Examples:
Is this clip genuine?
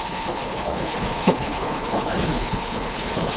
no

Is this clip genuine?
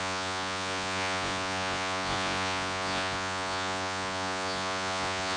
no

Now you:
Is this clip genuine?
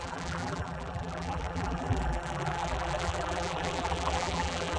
no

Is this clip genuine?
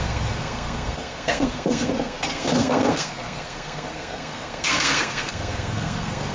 no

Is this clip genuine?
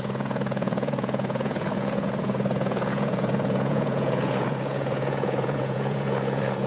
no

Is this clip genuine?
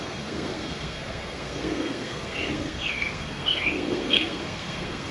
no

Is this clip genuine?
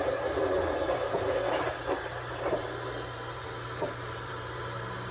no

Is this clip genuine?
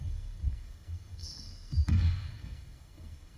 no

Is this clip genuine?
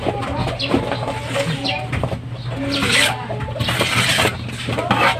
yes